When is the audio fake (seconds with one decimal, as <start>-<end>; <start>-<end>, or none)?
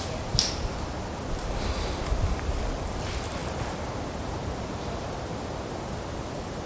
none